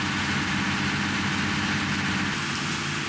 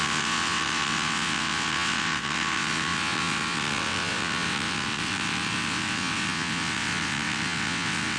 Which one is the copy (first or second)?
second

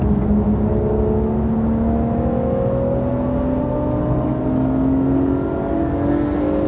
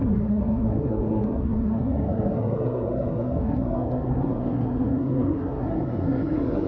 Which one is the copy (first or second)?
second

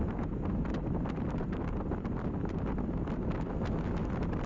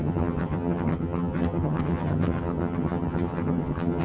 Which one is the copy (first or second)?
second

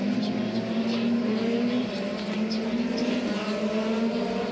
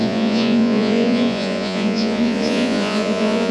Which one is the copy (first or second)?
second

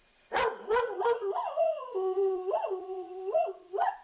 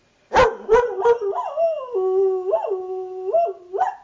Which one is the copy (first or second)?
first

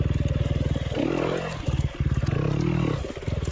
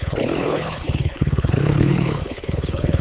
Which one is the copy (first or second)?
second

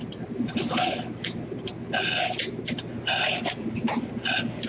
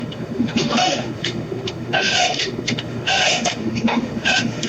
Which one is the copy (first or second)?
second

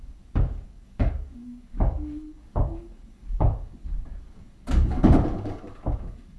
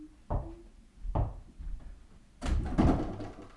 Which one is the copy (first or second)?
first